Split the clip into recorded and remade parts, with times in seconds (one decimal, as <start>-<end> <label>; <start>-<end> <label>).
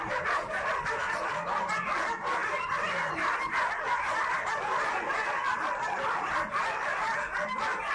0.0-7.9 recorded